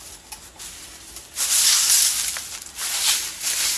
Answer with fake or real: real